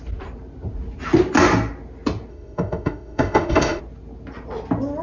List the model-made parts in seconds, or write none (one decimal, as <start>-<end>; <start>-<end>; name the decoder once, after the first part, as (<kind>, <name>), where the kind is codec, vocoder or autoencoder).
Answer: 2.3-3.8 (autoencoder, DAC-VAE)